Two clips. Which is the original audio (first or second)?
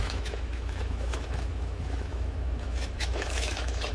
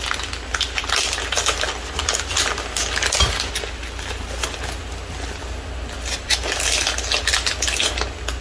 second